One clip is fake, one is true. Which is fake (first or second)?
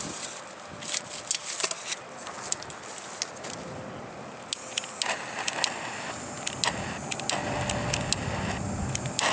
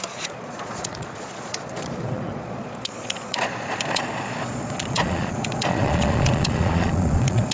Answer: second